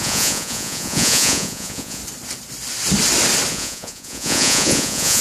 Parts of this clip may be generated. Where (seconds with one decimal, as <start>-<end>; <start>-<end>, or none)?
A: 0.0-2.0; 3.5-5.2